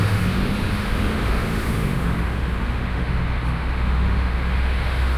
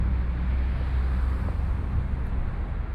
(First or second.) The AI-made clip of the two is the first